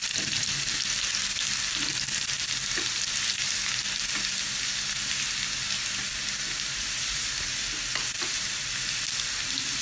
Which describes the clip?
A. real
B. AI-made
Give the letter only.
A